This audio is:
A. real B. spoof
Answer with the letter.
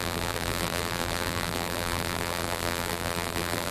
B